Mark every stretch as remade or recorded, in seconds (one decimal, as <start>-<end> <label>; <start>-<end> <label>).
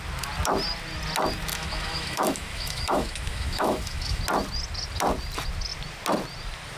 0.0-1.5 recorded; 1.5-4.2 remade; 4.2-6.8 recorded